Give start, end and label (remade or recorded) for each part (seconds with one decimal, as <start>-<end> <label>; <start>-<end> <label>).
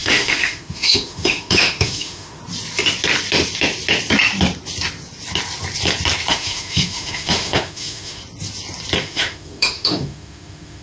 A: 0.0-2.4 remade; 2.4-6.3 recorded; 6.3-8.2 remade; 8.2-9.0 recorded; 9.0-10.8 remade